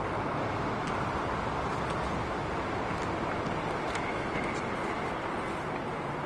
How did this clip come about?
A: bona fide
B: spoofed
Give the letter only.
A